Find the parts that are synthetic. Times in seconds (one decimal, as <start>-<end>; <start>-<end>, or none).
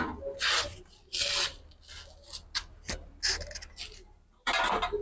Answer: none